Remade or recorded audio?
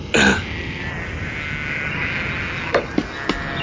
recorded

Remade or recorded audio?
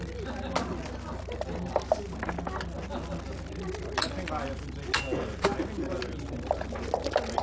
recorded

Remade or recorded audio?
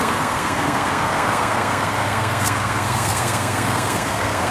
remade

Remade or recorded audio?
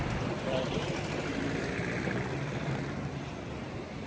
recorded